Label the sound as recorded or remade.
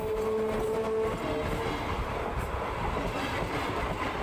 recorded